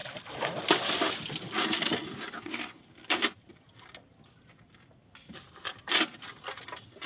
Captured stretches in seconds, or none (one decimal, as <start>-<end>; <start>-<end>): 0.0-2.3; 2.8-7.1

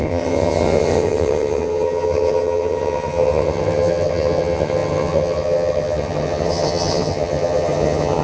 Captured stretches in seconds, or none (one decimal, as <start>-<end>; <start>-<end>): none